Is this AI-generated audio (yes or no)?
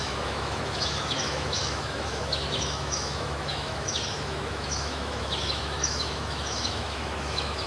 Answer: yes